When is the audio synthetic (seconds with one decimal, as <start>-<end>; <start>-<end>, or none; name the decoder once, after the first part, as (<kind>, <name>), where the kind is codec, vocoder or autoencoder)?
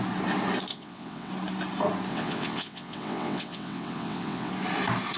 0.7-1.3 (vocoder, WaveNeXt); 2.1-4.5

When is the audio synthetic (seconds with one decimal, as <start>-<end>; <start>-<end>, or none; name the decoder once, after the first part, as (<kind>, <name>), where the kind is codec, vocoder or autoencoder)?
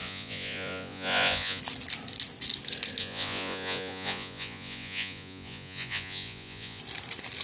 0.0-1.6 (vocoder, Vocos); 3.0-6.8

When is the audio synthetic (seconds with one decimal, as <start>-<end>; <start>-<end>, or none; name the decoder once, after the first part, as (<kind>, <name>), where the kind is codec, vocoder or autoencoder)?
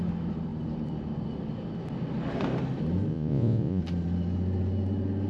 3.1-3.8 (vocoder, Vocos)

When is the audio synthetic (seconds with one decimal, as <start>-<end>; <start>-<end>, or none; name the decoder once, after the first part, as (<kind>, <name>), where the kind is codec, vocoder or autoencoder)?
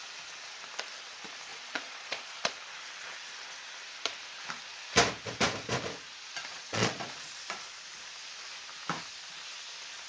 1.5-2.5 (vocoder, Vocos); 6.5-7.0